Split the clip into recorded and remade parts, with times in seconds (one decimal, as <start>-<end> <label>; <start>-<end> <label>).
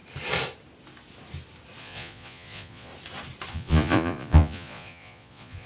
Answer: 0.0-1.8 recorded; 1.8-2.9 remade; 2.9-3.5 recorded; 3.5-5.7 remade